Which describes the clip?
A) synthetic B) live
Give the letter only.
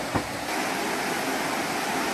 B